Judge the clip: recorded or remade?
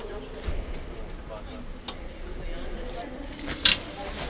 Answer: recorded